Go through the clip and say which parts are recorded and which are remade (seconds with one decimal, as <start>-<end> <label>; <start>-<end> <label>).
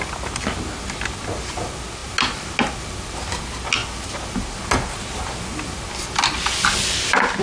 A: 0.0-7.4 recorded